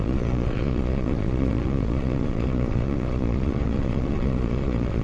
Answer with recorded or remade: remade